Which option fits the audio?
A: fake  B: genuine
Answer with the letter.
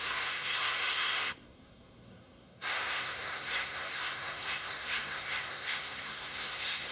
A